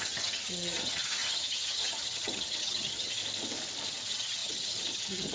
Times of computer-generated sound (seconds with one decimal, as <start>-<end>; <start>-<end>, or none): 0.0-3.2; 3.9-5.3